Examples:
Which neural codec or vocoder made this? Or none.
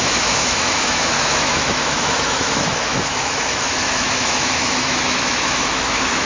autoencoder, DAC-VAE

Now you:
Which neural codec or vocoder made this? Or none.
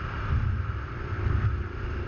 vocoder, BigVGAN v2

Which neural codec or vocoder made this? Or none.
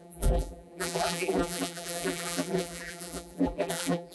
vocoder, BigVGAN v2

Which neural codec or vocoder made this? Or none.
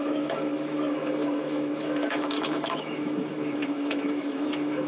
autoencoder, DAC-VAE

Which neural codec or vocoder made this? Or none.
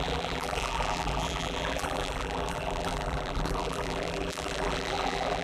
vocoder, BigVGAN v2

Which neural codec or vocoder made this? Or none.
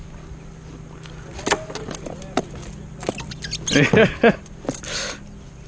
none